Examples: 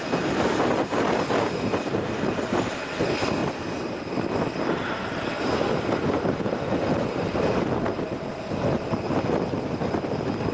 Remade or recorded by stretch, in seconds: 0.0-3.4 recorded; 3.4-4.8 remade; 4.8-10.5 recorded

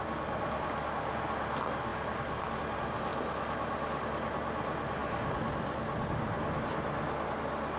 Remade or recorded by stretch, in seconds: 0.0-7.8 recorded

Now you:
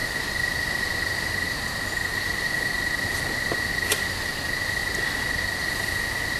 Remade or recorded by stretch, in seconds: 0.0-4.8 recorded; 4.8-5.4 remade; 5.4-6.4 recorded